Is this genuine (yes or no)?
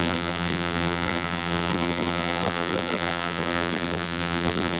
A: no